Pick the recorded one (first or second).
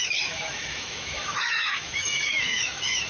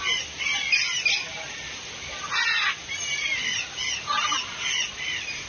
second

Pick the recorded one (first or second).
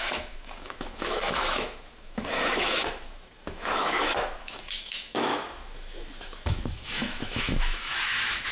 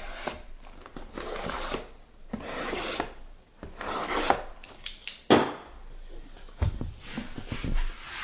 second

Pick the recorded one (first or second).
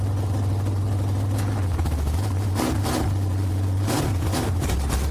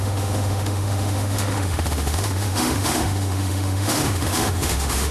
first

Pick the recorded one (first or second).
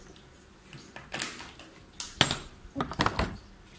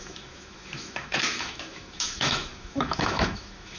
first